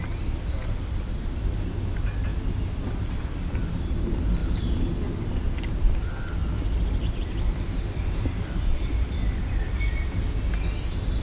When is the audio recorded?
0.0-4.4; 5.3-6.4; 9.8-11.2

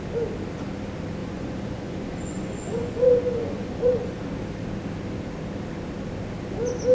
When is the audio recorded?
0.0-1.2; 4.2-6.9